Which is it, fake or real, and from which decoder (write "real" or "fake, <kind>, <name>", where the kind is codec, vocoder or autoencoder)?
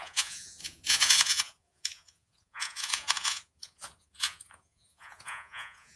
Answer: fake, vocoder, Vocos